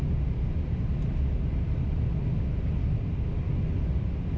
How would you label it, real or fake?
real